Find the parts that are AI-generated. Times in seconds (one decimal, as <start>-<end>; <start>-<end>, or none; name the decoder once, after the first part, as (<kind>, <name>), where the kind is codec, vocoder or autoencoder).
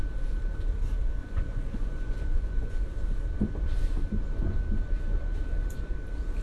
1.2-2.7 (vocoder, Vocos)